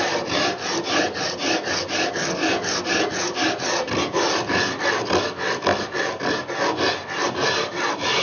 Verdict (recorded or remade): recorded